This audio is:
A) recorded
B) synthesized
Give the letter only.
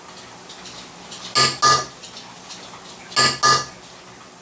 A